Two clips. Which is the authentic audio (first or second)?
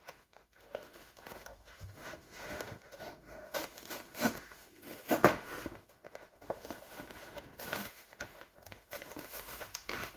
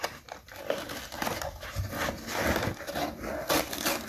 second